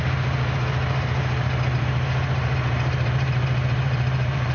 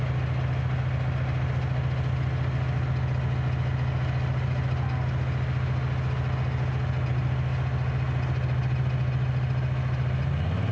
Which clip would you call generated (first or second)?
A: first